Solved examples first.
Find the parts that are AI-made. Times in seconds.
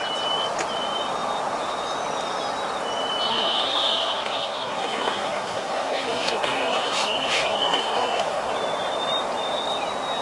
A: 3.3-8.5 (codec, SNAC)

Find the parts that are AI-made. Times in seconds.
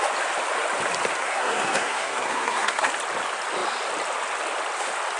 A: 1.2-2.9 (codec, SNAC)